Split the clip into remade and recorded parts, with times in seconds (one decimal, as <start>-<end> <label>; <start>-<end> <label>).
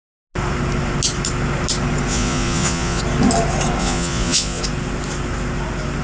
0.0-2.1 recorded; 2.1-3.0 remade; 3.0-3.8 recorded; 3.8-4.6 remade; 4.6-6.0 recorded